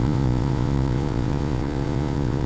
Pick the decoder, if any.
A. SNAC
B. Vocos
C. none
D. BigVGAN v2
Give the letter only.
B